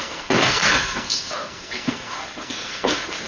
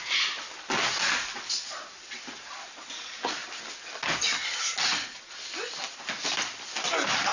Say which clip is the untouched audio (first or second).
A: second